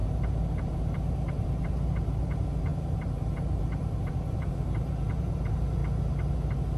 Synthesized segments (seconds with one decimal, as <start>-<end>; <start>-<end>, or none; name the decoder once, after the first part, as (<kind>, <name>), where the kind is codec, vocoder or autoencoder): 0.0-5.8 (vocoder, BigVGAN v2); 6.3-6.8